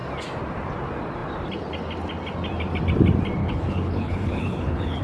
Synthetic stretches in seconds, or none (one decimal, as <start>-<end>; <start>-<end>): 3.4-5.0